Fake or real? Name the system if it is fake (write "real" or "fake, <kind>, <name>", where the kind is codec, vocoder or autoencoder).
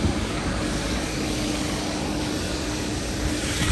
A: fake, codec, DAC